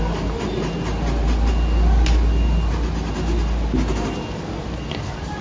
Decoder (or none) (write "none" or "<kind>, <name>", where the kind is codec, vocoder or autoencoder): none